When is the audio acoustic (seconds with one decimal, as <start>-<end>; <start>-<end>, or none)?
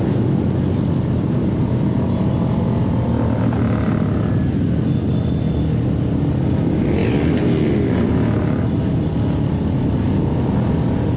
0.0-11.2